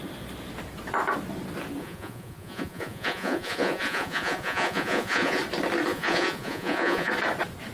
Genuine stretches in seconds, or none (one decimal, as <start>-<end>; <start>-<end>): 0.0-1.8; 5.4-5.9; 7.1-7.7